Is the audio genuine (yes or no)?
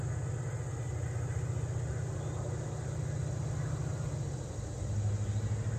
yes